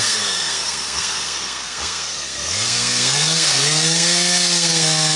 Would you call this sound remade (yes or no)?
yes